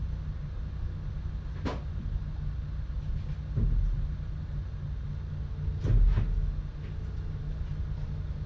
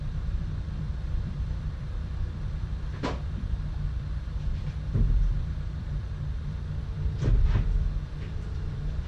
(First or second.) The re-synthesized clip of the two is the second